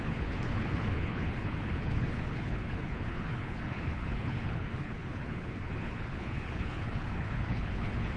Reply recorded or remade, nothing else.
remade